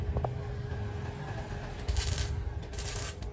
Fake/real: real